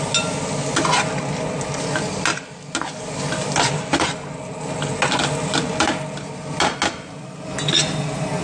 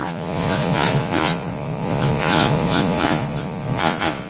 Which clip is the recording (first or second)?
first